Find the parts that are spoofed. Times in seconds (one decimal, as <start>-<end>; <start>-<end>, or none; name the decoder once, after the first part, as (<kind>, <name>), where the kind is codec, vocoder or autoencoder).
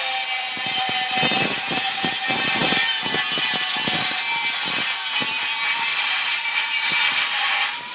5.9-7.2 (vocoder, Vocos)